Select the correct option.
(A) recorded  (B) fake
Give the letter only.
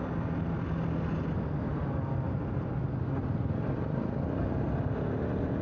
A